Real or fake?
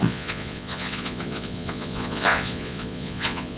fake